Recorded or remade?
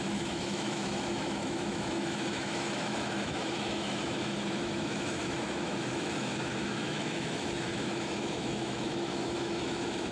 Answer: remade